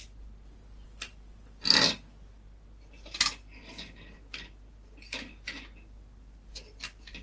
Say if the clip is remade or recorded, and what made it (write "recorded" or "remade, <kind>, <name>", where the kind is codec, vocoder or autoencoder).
recorded